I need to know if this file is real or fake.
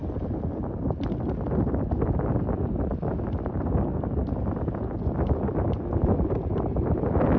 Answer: real